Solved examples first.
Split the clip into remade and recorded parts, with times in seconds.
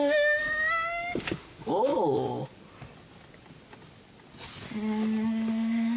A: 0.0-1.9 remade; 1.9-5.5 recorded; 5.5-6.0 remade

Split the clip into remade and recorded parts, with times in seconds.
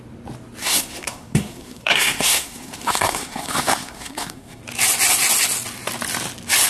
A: 0.0-0.6 recorded; 0.6-4.6 remade; 4.6-6.7 recorded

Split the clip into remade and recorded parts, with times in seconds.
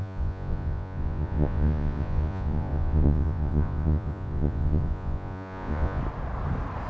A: 0.0-6.0 remade; 6.0-6.9 recorded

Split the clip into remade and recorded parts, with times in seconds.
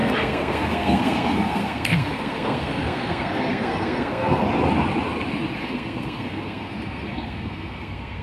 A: 0.0-4.4 remade; 4.4-5.6 recorded; 5.6-8.2 remade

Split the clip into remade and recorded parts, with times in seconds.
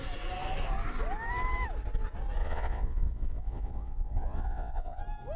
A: 0.0-2.4 recorded; 2.4-5.0 remade; 5.0-5.4 recorded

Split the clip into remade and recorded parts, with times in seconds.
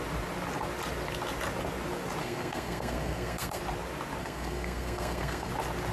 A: 0.0-2.2 recorded; 2.2-3.6 remade; 3.6-4.2 recorded; 4.2-5.5 remade; 5.5-5.9 recorded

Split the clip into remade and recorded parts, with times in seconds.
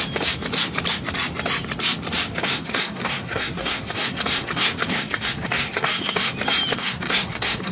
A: 0.0-2.4 recorded; 2.4-6.3 remade; 6.3-6.7 recorded; 6.7-7.7 remade